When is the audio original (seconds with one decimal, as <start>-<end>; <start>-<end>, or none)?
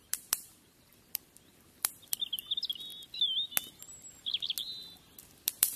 2.9-4.7